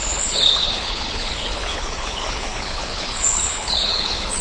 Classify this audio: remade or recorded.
remade